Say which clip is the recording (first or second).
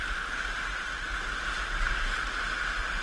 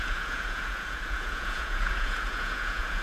first